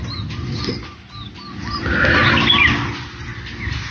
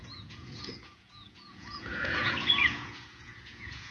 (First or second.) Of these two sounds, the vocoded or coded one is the second